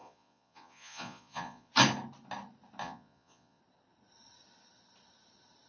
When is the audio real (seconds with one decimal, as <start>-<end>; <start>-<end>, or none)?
1.7-2.8; 3.6-5.7